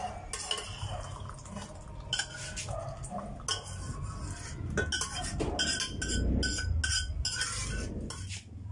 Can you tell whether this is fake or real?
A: real